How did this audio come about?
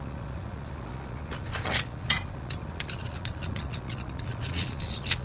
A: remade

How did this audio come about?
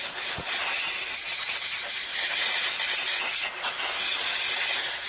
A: recorded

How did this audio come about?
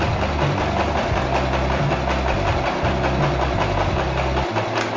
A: recorded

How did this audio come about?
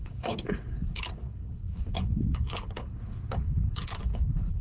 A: remade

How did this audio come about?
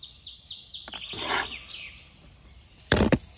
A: recorded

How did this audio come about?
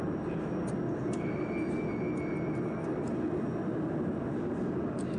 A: recorded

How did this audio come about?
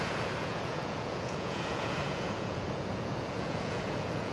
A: remade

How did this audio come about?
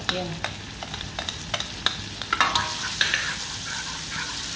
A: recorded